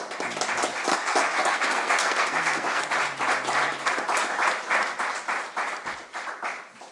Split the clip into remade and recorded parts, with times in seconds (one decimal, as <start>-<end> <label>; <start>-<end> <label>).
0.0-0.9 recorded; 0.9-2.8 remade; 2.8-6.9 recorded